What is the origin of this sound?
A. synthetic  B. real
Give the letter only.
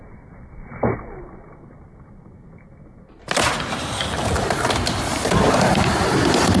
B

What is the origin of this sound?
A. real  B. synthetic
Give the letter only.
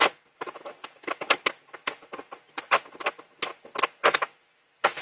A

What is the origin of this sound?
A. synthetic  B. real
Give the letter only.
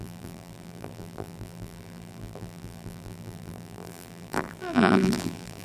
A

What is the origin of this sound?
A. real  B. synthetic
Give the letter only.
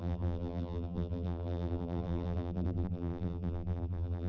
B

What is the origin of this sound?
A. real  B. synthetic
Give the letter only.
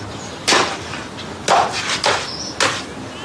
A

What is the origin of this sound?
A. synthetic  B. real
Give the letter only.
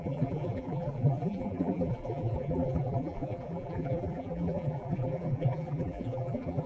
A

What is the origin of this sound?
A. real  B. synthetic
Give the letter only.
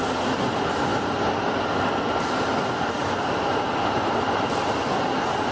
A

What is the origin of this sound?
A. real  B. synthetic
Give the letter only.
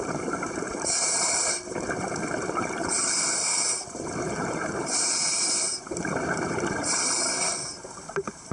B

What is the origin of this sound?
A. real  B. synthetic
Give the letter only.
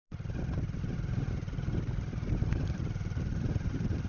B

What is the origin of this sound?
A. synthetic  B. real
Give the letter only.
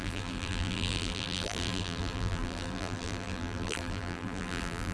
A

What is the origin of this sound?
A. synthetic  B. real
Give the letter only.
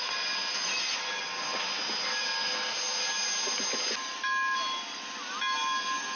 B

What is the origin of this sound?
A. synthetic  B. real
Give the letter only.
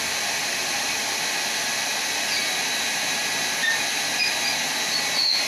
A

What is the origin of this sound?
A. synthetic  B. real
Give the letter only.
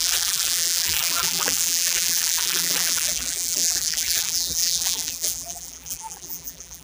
A